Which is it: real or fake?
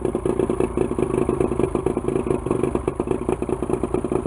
real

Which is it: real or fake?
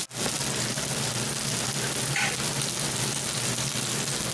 real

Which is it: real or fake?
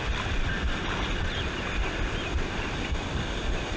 real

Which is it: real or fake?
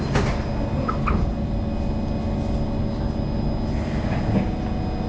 real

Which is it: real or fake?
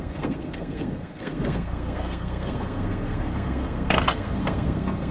fake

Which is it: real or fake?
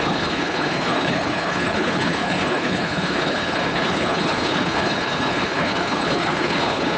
fake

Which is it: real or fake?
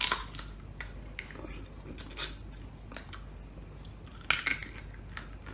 real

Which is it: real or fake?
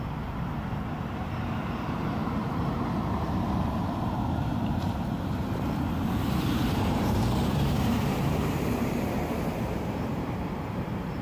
fake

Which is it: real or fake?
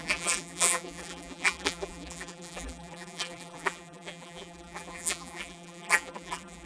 fake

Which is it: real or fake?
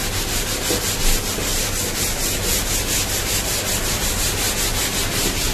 real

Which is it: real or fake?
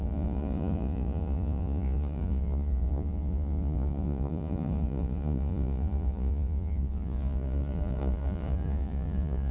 fake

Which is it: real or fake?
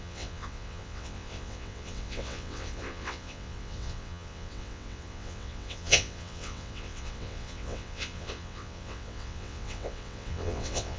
fake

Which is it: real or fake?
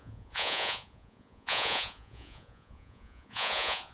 fake